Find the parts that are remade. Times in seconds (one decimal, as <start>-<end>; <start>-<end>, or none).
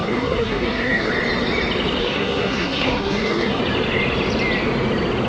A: 0.0-1.1; 2.0-3.6